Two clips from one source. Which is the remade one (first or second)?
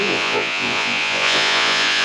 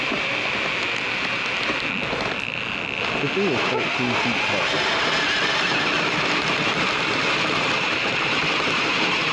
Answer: first